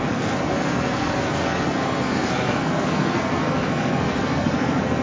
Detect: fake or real fake